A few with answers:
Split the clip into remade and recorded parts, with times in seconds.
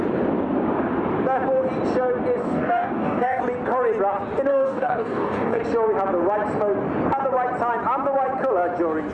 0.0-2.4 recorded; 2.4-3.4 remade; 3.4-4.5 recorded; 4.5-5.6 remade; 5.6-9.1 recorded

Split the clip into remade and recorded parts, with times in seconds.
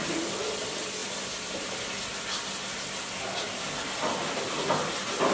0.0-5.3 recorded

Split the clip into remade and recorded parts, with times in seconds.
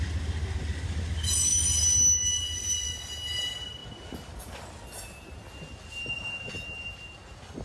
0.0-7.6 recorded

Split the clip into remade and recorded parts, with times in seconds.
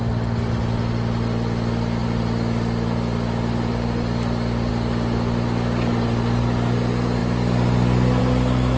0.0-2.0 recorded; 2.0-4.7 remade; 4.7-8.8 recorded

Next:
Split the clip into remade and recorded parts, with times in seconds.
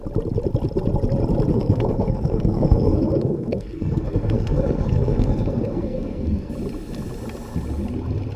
0.0-1.5 recorded; 1.5-6.5 remade; 6.5-8.4 recorded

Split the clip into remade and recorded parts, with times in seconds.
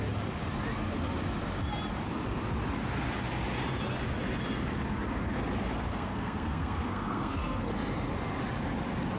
0.0-5.9 recorded; 5.9-7.7 remade; 7.7-9.2 recorded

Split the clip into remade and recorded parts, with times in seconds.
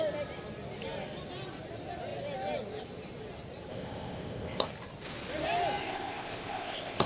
0.0-3.7 recorded; 3.7-4.7 remade; 4.7-5.8 recorded; 5.8-7.1 remade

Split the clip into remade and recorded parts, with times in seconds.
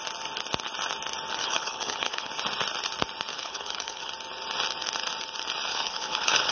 0.0-1.4 recorded; 1.4-2.3 remade; 2.3-3.3 recorded; 3.3-4.1 remade; 4.1-5.7 recorded; 5.7-6.5 remade